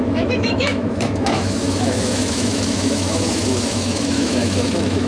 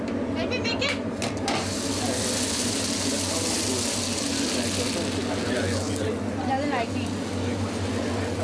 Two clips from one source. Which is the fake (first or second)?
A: first